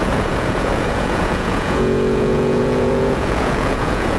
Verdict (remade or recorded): remade